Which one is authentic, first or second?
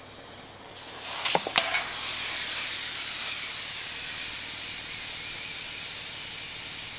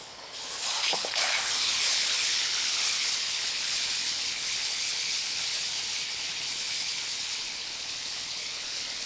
first